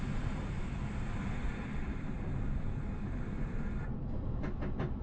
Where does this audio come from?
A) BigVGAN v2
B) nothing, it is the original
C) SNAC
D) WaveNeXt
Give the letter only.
B